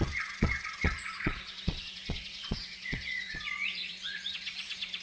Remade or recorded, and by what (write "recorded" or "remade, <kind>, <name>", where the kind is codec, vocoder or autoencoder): remade, vocoder, Vocos